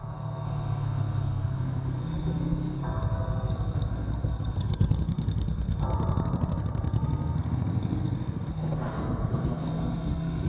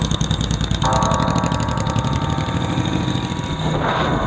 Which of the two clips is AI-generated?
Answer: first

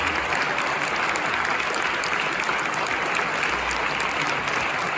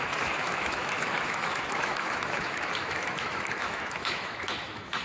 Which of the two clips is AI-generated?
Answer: second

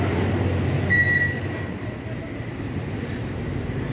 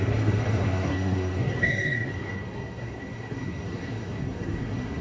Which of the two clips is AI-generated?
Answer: second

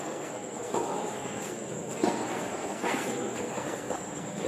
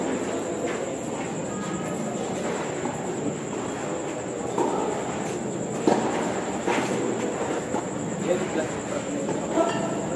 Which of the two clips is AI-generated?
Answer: first